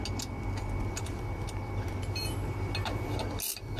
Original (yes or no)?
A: yes